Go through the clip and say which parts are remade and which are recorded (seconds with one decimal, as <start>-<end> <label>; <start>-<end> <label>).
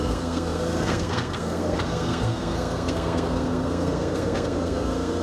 0.0-5.2 remade